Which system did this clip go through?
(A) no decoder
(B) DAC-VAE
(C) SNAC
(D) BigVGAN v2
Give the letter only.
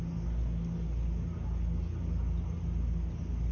A